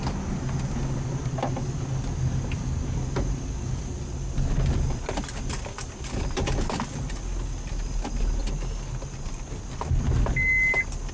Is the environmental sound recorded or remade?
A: recorded